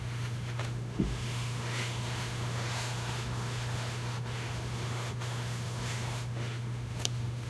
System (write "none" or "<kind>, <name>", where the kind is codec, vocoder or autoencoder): autoencoder, DAC-VAE